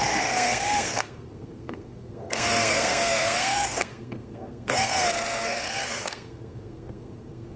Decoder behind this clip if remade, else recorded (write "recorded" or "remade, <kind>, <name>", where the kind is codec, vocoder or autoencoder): remade, codec, SNAC